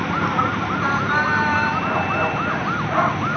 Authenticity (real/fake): real